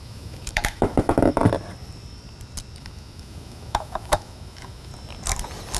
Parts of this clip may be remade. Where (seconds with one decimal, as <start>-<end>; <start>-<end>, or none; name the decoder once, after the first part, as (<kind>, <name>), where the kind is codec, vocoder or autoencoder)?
0.0-1.4 (autoencoder, DAC-VAE); 2.8-4.9